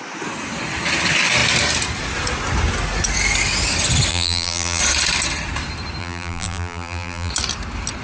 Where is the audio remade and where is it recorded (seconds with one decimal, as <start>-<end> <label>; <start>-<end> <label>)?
0.0-4.1 recorded; 4.1-4.8 remade; 4.8-6.0 recorded; 6.0-7.3 remade; 7.3-8.0 recorded